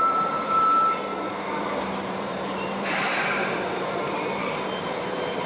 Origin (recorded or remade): remade